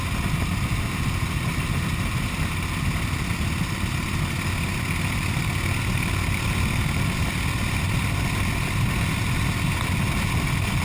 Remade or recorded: recorded